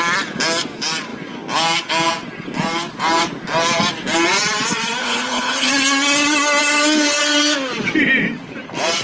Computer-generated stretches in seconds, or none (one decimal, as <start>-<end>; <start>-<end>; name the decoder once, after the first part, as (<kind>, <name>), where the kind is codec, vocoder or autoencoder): 5.0-5.7 (codec, HILCodec)